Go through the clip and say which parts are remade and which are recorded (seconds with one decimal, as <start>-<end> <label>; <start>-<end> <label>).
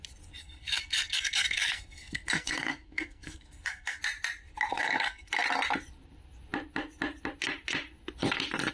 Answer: 0.0-0.4 recorded; 0.4-4.0 remade; 4.0-4.7 recorded; 4.7-5.3 remade; 5.3-8.7 recorded